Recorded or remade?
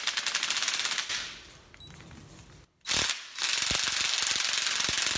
recorded